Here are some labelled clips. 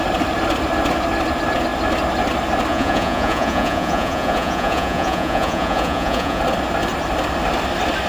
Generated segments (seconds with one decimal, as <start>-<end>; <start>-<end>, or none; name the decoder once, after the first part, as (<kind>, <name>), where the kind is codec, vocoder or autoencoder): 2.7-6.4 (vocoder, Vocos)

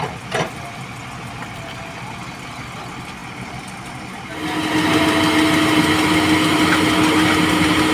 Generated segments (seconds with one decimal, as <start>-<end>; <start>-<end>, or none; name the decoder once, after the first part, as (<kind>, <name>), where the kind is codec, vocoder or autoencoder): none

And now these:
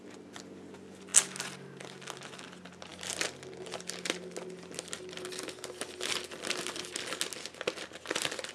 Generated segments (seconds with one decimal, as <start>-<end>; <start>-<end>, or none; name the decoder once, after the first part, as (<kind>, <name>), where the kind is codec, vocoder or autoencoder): none

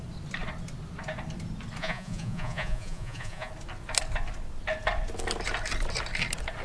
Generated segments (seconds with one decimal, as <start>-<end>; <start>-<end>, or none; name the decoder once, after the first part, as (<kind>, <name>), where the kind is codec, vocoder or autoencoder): 1.8-3.5 (vocoder, Vocos)